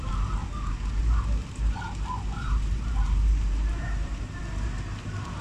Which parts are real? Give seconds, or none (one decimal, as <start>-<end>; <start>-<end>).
0.0-2.4; 4.4-5.4